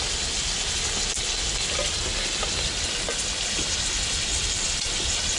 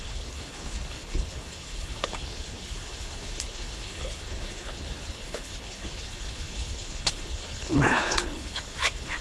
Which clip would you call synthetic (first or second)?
second